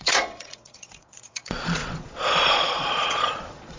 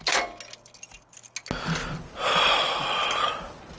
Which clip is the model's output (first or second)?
first